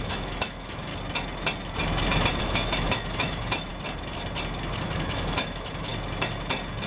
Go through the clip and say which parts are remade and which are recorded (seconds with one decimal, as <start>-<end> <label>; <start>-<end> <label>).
0.0-0.9 remade; 0.9-2.4 recorded; 2.4-3.7 remade; 3.7-4.8 recorded; 4.8-5.9 remade; 5.9-6.9 recorded

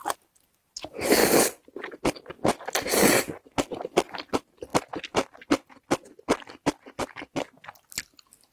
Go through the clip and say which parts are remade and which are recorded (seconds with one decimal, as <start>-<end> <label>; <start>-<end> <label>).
0.0-8.5 recorded

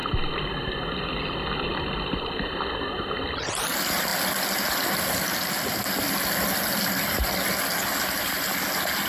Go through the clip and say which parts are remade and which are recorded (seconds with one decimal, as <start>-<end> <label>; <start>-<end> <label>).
0.0-9.1 recorded